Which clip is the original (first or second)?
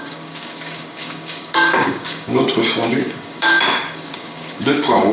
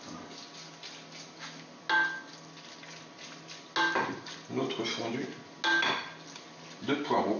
second